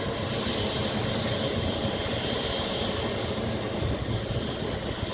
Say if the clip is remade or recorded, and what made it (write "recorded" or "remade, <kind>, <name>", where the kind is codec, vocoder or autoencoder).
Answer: recorded